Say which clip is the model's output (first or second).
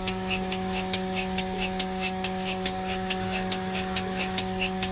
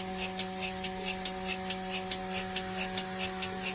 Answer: first